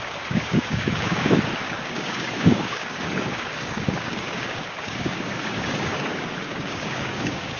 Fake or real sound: fake